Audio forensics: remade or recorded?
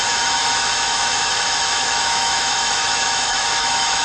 remade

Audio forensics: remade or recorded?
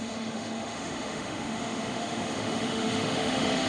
remade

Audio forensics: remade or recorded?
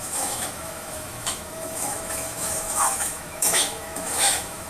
remade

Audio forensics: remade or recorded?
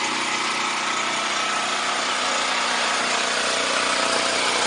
recorded